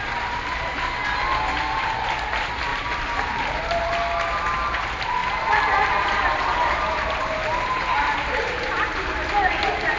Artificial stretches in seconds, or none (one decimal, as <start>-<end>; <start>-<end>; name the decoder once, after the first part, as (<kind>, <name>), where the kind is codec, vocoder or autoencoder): 2.7-3.9 (vocoder, BigVGAN v2); 5.2-10.0

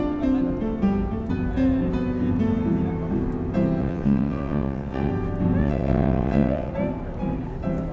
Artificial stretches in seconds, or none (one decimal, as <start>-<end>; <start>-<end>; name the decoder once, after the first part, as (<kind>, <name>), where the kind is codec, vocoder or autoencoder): 3.8-5.1 (vocoder, WaveNeXt); 5.6-6.7

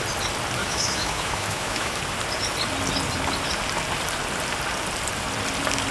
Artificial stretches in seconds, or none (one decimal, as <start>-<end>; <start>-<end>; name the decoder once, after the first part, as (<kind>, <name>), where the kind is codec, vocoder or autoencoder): 0.6-2.0 (autoencoder, DAC-VAE)